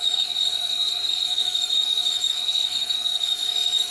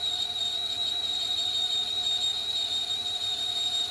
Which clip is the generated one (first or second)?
first